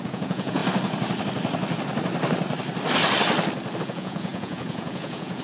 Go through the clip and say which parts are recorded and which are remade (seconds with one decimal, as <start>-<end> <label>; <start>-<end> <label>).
0.0-0.6 remade; 0.6-3.8 recorded; 3.8-5.4 remade